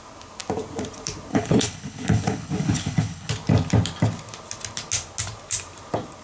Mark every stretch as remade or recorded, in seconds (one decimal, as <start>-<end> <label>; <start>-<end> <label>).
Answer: 0.0-1.3 recorded; 1.3-3.3 remade; 3.3-6.2 recorded